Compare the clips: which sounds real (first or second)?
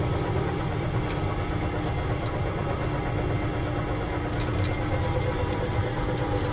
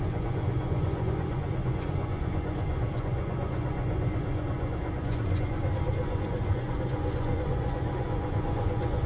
first